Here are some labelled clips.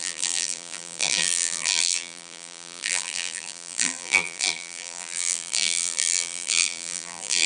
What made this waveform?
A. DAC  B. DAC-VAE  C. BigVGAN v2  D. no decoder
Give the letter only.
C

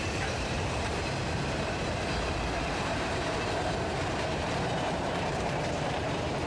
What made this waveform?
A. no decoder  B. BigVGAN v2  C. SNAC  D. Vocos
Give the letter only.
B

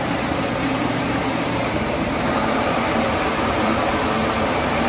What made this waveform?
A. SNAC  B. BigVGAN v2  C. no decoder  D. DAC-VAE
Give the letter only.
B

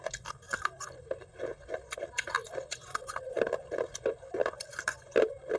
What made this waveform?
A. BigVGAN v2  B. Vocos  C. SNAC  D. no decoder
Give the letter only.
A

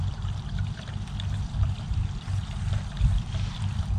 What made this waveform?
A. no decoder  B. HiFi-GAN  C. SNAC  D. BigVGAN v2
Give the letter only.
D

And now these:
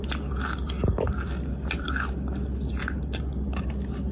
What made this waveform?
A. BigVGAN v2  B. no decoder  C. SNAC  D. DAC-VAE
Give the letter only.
B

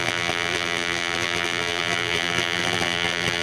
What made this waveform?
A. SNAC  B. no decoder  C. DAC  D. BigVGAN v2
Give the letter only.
D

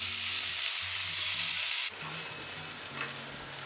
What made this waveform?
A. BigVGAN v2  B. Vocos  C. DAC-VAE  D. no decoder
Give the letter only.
D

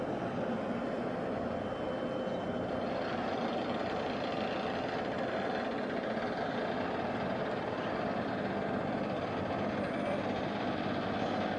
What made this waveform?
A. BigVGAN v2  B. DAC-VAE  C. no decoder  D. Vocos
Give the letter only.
A